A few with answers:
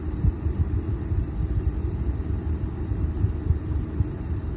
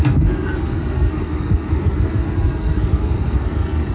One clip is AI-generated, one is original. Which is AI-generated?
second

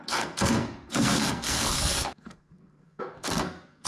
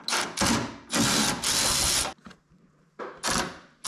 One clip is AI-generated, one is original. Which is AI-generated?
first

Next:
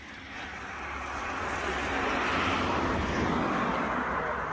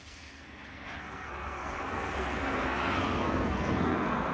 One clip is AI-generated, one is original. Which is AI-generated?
second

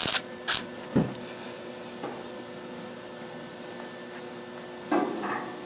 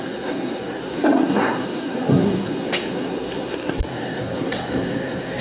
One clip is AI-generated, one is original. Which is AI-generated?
second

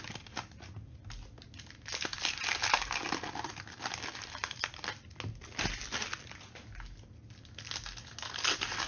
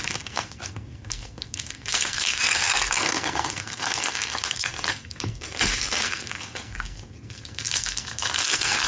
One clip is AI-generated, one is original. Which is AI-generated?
second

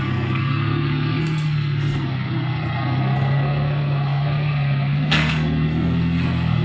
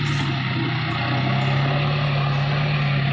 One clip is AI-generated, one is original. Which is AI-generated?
first